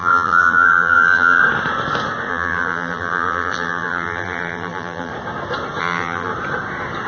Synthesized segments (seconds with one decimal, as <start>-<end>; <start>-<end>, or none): 0.0-1.4; 2.3-5.1; 5.8-6.3